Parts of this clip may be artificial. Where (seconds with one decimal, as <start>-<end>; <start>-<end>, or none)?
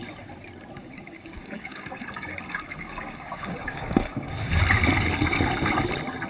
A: 0.8-4.6